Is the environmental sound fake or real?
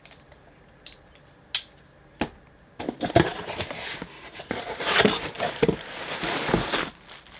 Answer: real